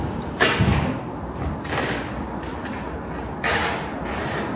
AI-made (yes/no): no